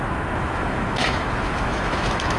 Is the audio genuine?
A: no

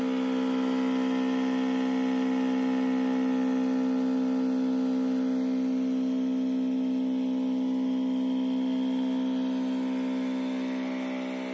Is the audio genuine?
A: yes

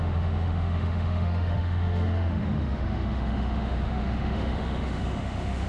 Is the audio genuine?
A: no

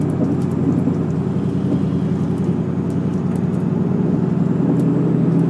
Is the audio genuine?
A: yes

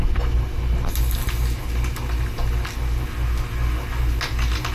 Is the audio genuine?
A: yes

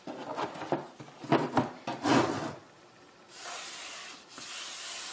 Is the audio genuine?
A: yes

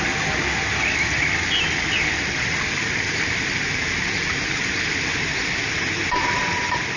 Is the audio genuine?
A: yes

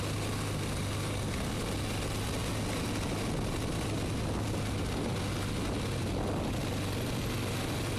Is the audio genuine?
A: yes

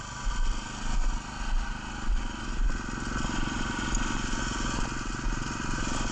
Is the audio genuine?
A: yes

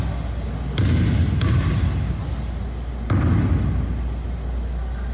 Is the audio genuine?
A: yes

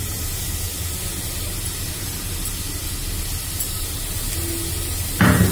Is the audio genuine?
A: yes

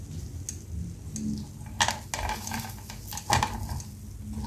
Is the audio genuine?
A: yes